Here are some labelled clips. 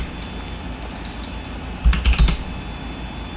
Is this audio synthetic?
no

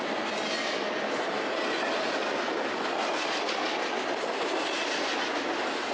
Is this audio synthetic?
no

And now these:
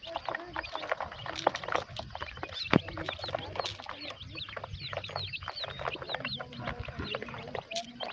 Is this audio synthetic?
no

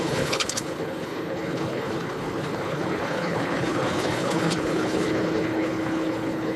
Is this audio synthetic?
yes